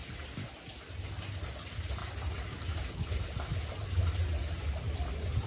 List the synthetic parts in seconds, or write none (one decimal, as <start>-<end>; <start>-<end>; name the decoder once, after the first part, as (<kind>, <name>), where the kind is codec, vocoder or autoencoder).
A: none